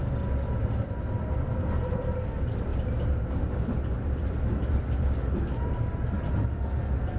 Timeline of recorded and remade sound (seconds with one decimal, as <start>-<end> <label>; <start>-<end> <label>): 0.0-7.2 recorded